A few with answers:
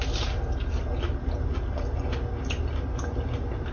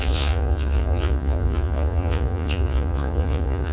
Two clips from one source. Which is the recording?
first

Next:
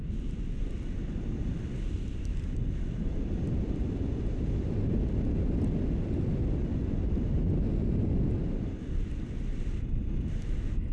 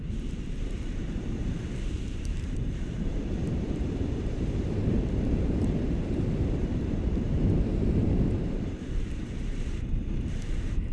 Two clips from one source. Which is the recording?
first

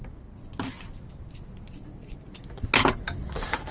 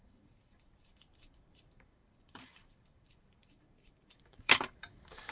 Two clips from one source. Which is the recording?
first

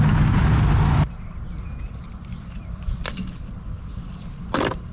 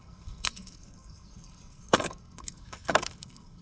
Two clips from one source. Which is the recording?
first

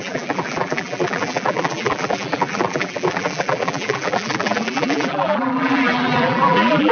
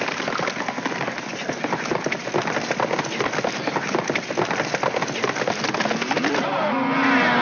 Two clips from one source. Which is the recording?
second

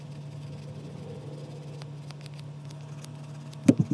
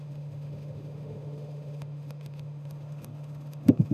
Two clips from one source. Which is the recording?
first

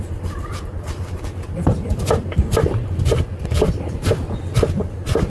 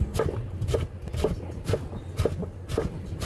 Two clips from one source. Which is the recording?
second